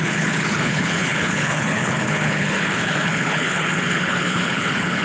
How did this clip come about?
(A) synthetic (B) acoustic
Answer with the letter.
A